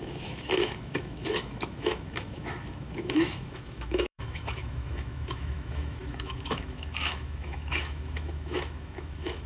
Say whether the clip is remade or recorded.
remade